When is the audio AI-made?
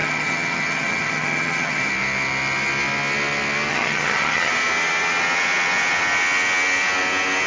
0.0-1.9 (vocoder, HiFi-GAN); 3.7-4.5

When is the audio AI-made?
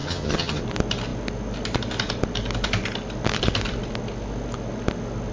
0.0-0.6 (vocoder, HiFi-GAN)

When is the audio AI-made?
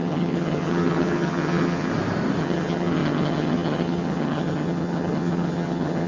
0.0-1.9 (vocoder, HiFi-GAN); 2.4-6.1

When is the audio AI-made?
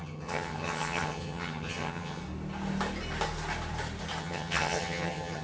0.0-2.2 (vocoder, HiFi-GAN); 4.2-5.4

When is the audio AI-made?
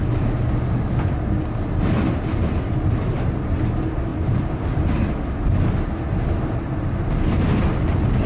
none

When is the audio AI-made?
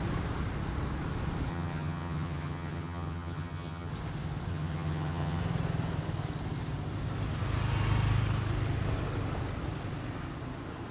1.5-3.9 (vocoder, HiFi-GAN); 4.5-5.4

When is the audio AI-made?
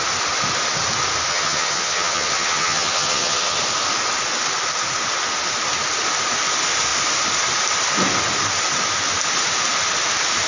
1.3-3.6 (vocoder, HiFi-GAN)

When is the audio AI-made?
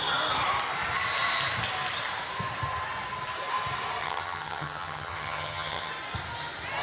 4.0-5.9 (vocoder, HiFi-GAN)